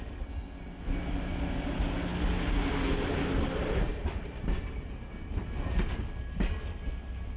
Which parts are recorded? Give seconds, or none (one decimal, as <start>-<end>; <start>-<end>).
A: 0.0-7.4